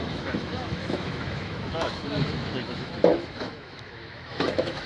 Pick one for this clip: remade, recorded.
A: remade